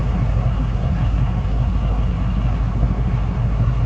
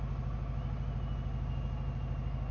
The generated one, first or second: first